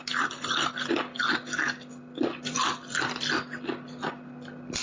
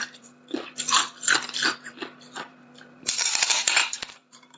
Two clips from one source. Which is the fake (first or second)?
second